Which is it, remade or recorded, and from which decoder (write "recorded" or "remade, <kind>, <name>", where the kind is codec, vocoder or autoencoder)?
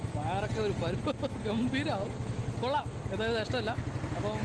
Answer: recorded